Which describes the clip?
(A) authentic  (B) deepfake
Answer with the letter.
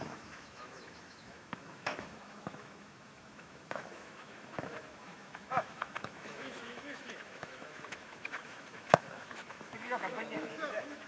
B